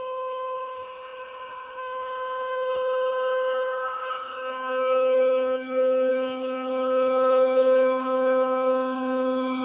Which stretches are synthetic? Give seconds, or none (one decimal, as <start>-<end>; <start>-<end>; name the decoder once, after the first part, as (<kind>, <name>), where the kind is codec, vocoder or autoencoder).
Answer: 0.0-9.6 (codec, HILCodec)